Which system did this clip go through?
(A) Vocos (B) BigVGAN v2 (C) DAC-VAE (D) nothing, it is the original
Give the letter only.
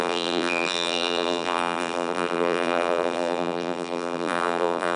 B